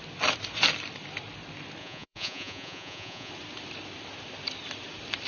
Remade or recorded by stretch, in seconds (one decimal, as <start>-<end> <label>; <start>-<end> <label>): 0.0-1.8 recorded; 1.8-3.3 remade; 3.3-5.3 recorded